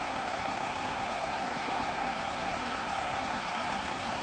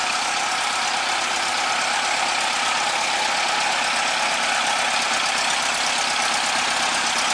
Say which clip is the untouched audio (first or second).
second